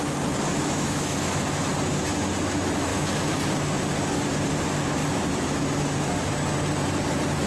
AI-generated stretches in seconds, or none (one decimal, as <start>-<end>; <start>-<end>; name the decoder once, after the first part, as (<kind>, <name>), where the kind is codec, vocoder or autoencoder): 0.5-1.4 (autoencoder, DAC-VAE); 2.9-3.4